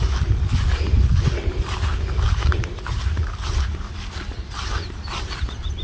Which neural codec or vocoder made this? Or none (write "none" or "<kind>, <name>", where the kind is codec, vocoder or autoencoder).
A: none